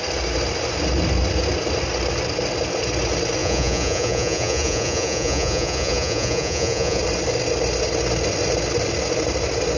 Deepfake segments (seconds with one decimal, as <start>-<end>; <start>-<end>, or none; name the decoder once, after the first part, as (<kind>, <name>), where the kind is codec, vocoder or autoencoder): 3.4-7.0 (vocoder, Vocos)